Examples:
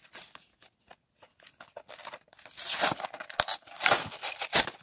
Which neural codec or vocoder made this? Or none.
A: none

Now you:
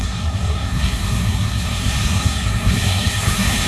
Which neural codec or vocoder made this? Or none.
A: codec, SNAC